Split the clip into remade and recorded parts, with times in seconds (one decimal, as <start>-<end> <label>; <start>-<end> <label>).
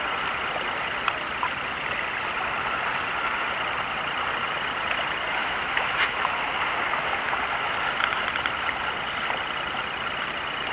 0.0-5.4 recorded; 5.4-6.4 remade; 6.4-10.7 recorded